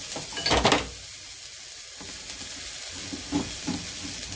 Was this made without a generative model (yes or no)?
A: yes